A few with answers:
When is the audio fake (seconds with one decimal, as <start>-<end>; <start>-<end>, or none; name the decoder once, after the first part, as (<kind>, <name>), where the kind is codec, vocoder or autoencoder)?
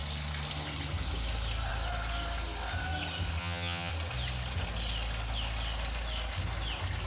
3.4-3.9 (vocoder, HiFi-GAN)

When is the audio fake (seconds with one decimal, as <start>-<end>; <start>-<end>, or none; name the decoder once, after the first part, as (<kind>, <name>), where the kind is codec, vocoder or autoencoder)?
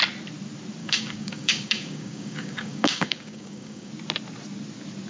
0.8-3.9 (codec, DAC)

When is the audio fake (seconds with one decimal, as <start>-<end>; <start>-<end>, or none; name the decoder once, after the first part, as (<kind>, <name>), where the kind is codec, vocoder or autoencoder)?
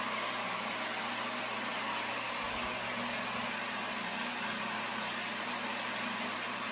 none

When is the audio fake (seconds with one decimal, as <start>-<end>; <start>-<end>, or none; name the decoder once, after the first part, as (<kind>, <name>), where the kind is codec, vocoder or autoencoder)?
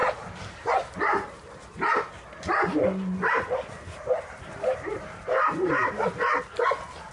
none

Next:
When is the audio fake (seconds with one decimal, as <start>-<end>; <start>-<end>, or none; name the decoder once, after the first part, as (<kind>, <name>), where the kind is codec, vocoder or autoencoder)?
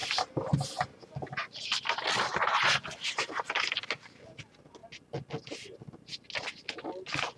none